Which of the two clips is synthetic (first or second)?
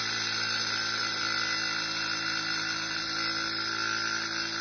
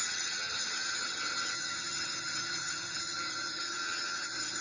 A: second